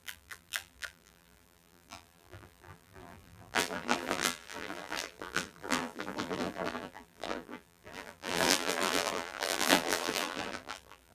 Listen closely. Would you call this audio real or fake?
fake